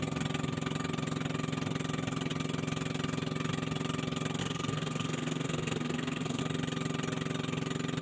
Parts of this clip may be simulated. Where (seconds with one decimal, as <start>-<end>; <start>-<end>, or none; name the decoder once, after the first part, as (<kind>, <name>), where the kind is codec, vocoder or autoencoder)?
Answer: 4.4-6.4 (codec, SNAC)